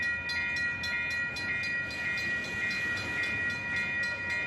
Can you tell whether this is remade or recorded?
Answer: recorded